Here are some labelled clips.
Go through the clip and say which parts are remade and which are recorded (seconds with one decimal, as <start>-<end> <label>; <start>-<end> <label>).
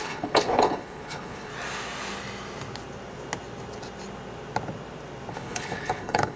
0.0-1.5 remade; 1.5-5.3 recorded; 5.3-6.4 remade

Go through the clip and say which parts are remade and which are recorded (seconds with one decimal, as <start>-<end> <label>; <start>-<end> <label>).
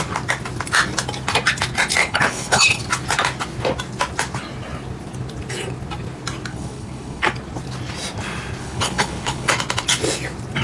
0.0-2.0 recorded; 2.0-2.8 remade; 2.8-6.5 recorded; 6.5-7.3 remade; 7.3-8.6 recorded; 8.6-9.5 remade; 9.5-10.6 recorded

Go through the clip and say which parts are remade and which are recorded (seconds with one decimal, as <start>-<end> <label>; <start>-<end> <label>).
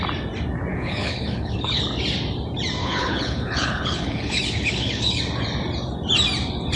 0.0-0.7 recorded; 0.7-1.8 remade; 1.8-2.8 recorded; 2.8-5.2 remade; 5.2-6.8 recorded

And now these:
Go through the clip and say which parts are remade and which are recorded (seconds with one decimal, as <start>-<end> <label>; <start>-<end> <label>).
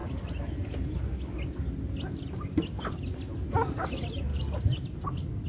0.0-5.5 recorded